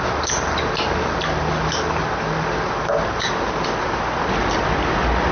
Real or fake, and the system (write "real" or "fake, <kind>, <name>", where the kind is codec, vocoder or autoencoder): real